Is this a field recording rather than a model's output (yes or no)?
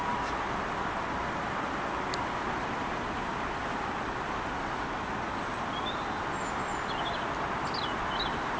yes